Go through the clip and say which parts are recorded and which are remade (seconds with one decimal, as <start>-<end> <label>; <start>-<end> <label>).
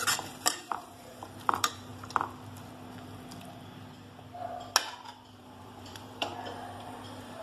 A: 0.0-1.9 remade; 1.9-5.4 recorded; 5.4-6.3 remade; 6.3-6.8 recorded; 6.8-7.4 remade